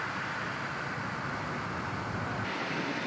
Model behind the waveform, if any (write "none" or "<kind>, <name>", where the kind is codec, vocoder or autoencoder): none